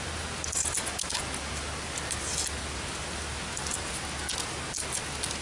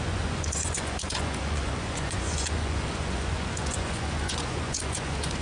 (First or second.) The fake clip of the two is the second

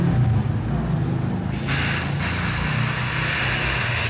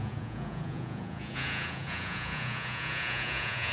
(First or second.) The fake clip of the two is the second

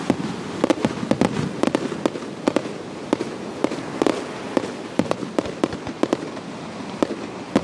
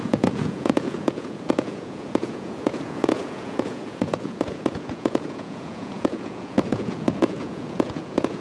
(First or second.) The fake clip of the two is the second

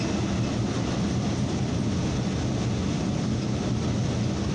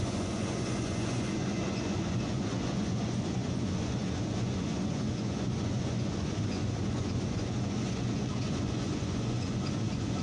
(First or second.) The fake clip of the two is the second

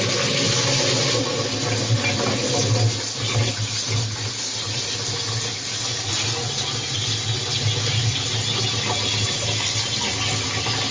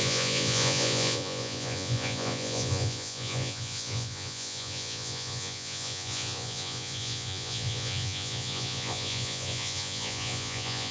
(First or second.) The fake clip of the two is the second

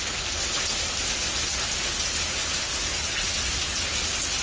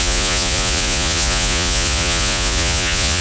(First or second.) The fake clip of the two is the second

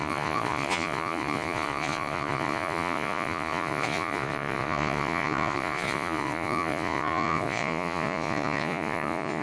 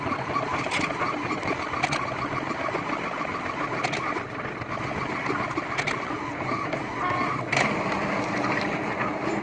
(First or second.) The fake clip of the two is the first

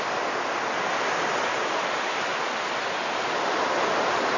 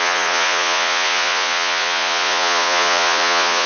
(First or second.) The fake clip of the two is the second